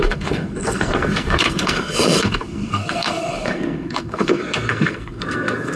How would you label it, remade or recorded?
remade